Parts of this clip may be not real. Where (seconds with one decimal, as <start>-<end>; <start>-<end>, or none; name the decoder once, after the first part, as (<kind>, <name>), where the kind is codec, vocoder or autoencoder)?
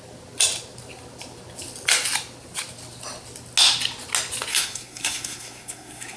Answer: 4.5-6.2 (codec, SNAC)